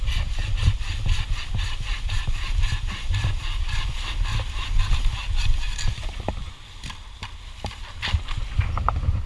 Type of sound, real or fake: real